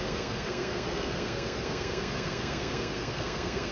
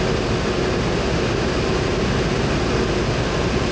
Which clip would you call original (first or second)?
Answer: second